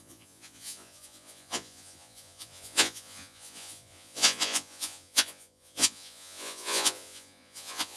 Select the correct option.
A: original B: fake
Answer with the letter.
B